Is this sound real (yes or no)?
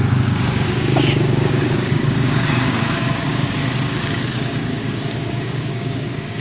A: no